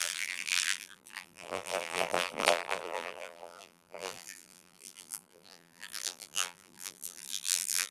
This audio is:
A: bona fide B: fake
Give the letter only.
B